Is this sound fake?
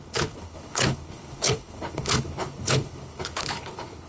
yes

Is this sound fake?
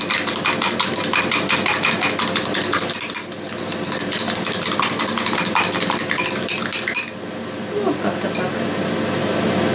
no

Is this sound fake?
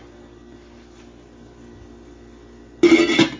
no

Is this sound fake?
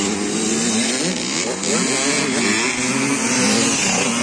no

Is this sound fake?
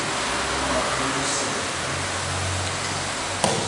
no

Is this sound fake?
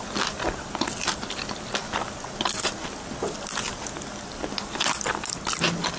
no